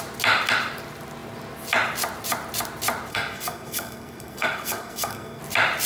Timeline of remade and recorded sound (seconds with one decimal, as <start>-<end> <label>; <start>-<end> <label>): 0.0-3.1 recorded; 3.1-5.4 remade; 5.4-5.9 recorded